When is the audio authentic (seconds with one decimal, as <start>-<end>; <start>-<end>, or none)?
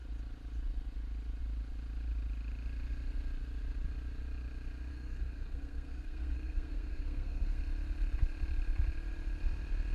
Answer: 0.0-4.9; 7.6-9.9